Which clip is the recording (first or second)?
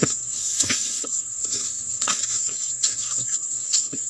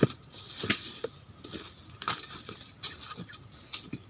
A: second